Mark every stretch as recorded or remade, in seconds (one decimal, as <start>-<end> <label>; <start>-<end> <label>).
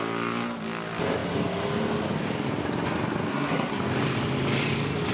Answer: 0.0-3.3 recorded; 3.3-3.8 remade; 3.8-5.1 recorded